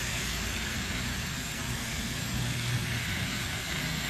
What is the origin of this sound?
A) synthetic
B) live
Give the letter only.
A